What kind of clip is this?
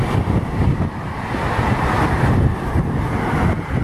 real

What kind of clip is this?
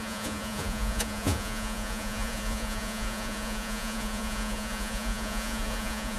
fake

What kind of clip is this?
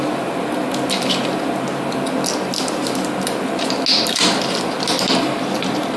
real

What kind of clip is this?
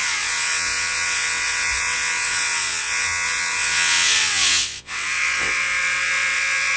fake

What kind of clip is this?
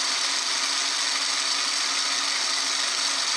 real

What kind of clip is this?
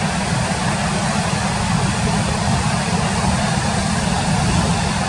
real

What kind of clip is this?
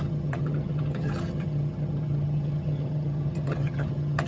fake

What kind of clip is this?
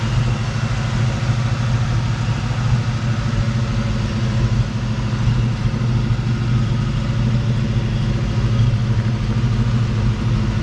real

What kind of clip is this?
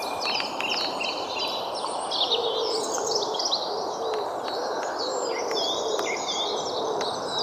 real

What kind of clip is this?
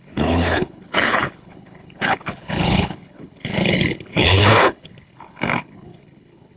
fake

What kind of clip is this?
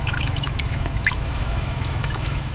fake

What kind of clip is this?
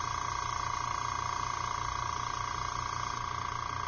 real